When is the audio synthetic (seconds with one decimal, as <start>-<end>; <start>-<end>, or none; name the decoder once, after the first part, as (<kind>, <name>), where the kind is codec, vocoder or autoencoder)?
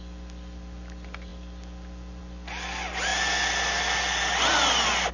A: none